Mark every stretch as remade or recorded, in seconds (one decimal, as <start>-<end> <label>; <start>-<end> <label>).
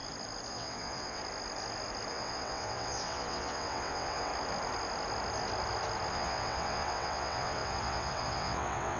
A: 0.0-0.5 recorded; 0.5-1.2 remade; 1.2-2.1 recorded; 2.1-4.3 remade; 4.3-6.1 recorded; 6.1-9.0 remade